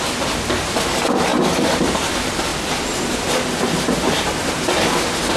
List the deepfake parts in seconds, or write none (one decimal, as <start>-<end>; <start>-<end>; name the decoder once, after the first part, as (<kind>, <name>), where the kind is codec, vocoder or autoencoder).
1.3-2.1 (vocoder, BigVGAN v2)